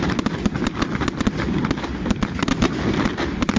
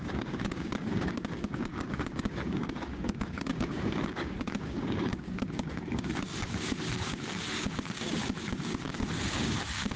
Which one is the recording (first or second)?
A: first